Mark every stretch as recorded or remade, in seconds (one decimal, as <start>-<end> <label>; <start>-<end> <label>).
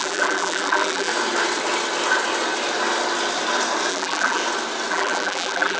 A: 0.0-1.1 remade; 1.1-3.9 recorded; 3.9-4.4 remade; 4.4-4.9 recorded; 4.9-5.8 remade